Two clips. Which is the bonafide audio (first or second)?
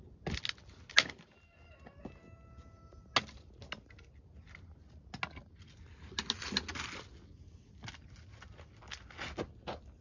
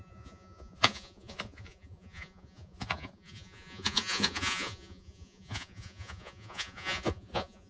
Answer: first